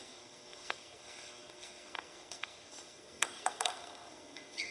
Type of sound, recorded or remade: remade